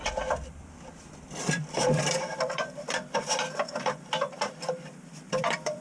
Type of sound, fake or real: fake